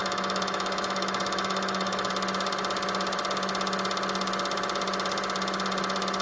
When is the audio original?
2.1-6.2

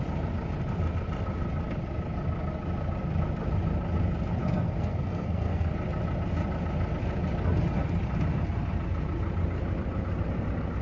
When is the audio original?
0.0-4.4; 5.7-10.8

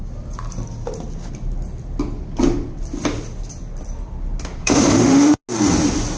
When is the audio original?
0.0-4.6; 5.4-6.2

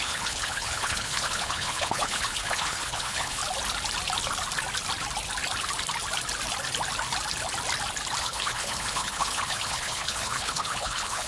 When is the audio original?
3.4-8.2

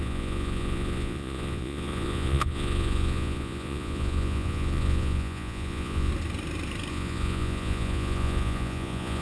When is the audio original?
6.1-6.9

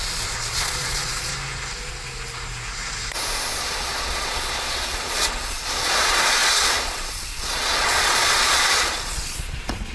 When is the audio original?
1.3-3.6

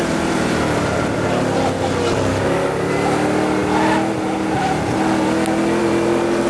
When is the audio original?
0.0-2.3; 2.9-6.5

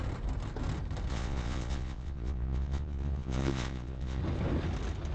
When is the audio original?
0.0-1.1; 4.2-5.1